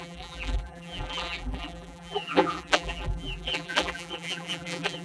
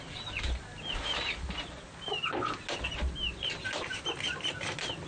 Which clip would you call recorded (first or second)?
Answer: second